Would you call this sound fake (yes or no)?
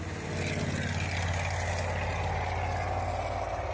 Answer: no